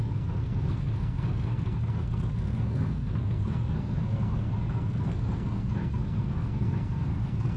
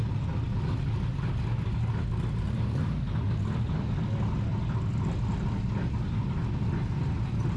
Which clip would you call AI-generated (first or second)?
first